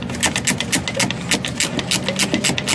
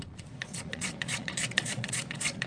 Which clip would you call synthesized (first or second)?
second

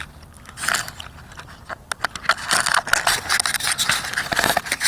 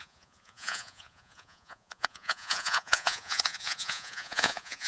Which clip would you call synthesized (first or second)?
second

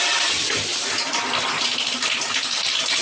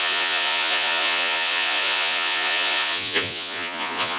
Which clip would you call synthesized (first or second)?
second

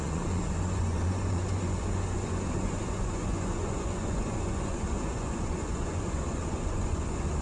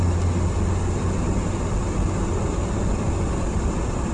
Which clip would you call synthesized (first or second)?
first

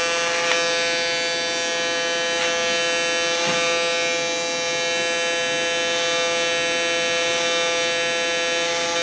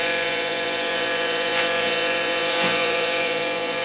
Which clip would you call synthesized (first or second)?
second